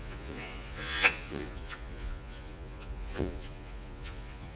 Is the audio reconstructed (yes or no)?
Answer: yes